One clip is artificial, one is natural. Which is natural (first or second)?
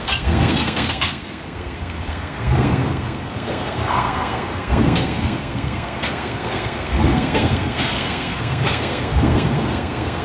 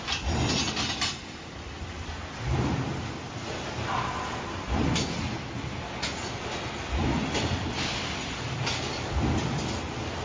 second